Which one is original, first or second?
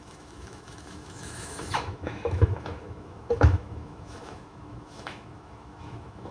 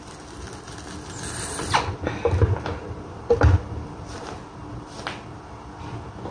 second